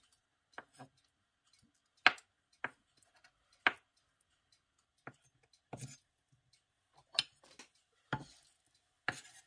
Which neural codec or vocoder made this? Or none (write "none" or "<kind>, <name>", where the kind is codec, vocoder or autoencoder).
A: none